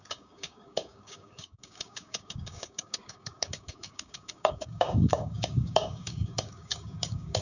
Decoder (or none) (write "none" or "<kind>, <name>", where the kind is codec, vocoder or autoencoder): codec, DAC